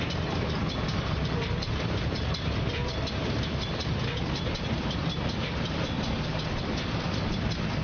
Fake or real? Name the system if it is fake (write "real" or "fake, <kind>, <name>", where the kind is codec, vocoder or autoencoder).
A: fake, vocoder, BigVGAN v2